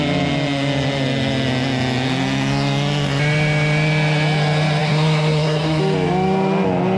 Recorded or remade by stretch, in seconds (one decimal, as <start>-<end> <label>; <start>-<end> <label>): 0.0-4.8 recorded; 4.8-5.8 remade; 5.8-7.0 recorded